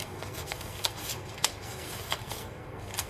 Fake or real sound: fake